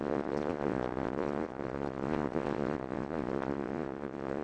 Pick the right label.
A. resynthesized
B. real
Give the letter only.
A